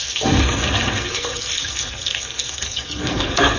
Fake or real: fake